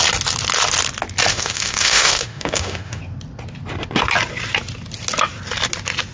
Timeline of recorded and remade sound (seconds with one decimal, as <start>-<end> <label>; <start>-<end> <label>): 0.0-1.3 recorded; 1.3-3.0 remade; 3.0-6.1 recorded